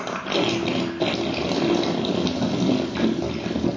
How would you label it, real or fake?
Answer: real